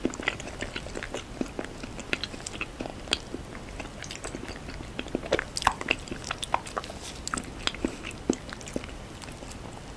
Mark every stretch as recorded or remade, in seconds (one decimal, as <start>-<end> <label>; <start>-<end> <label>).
0.0-10.0 recorded